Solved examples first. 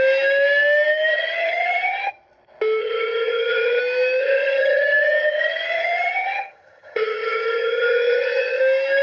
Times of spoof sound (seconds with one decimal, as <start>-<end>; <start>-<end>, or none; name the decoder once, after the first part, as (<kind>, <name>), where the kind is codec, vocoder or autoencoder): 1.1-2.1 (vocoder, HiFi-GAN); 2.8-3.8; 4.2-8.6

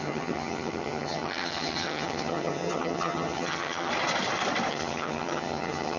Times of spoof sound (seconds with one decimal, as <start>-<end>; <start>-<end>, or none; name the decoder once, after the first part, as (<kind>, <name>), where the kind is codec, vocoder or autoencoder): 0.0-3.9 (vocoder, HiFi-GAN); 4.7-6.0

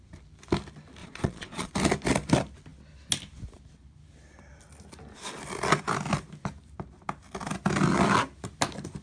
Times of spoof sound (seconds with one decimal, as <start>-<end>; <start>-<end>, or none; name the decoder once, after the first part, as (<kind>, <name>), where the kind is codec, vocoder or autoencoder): 1.0-1.7 (vocoder, Vocos)

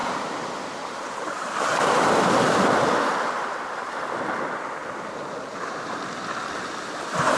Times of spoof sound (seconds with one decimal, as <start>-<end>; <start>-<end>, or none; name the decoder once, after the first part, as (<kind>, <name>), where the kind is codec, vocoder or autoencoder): 0.0-2.6 (vocoder, BigVGAN v2); 4.8-6.0

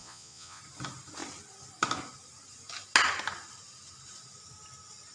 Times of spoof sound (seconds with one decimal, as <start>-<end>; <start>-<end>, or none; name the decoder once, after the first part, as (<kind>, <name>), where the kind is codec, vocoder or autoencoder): 0.0-0.6 (vocoder, Vocos)

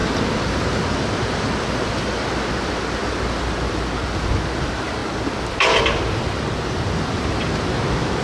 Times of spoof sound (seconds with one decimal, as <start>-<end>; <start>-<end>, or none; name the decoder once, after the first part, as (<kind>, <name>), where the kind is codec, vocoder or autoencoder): none

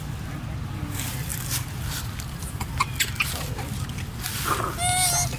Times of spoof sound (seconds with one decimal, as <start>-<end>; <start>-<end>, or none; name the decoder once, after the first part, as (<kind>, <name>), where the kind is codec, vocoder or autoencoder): none